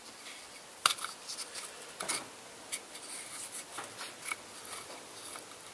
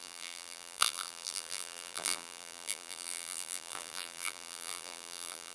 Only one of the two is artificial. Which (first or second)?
second